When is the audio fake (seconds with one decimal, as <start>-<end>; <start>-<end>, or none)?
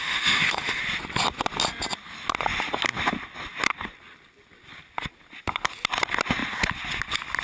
0.0-0.8